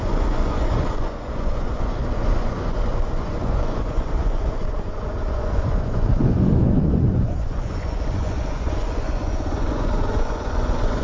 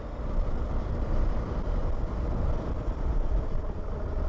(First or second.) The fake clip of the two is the first